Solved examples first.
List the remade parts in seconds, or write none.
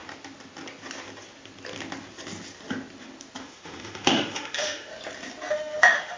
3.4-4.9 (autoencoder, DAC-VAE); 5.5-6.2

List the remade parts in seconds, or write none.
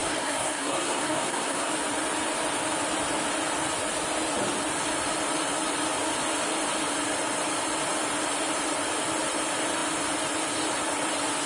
0.0-1.7 (codec, SNAC)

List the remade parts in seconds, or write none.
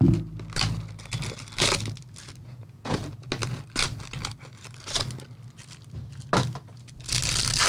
2.4-3.0 (vocoder, Vocos)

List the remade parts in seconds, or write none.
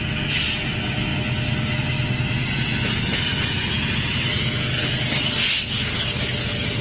none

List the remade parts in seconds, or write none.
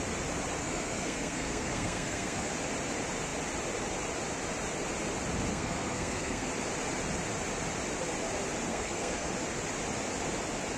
0.6-2.5 (codec, SNAC); 5.5-6.5; 8.7-9.3